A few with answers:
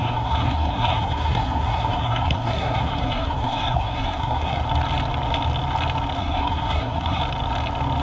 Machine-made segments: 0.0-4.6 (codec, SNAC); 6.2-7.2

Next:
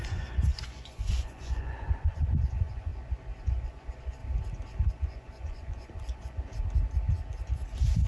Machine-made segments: 0.0-2.9 (vocoder, Vocos); 3.4-4.2; 4.9-6.5

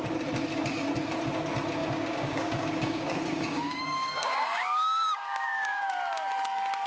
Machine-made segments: 1.8-5.9 (codec, DAC)

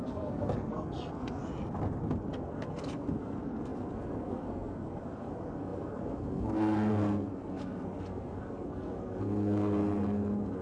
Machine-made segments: 0.0-1.4 (codec, SNAC); 2.3-10.6